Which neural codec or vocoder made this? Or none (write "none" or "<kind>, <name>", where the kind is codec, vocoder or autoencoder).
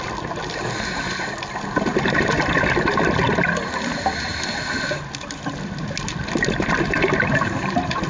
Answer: none